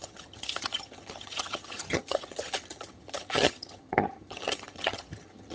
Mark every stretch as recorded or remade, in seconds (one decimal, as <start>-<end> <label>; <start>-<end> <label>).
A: 0.0-5.5 remade